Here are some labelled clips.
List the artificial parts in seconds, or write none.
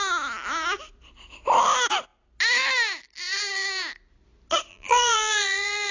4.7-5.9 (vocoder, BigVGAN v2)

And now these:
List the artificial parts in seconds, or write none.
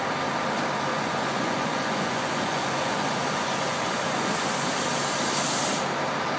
0.9-4.7 (vocoder, Vocos)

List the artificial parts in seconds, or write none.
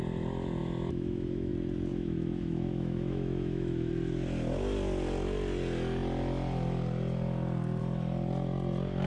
0.6-1.5 (autoencoder, DAC-VAE); 1.9-3.9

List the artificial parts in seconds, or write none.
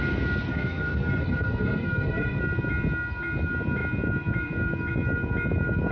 0.5-2.4 (codec, SNAC)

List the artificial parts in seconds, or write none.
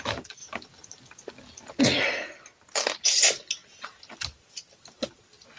none